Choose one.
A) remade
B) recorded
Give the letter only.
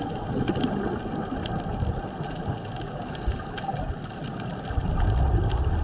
B